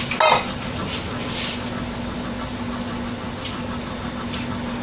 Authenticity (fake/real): real